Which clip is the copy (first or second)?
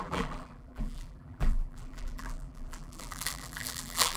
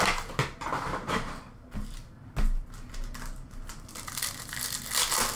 first